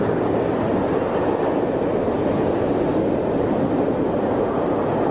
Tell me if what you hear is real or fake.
real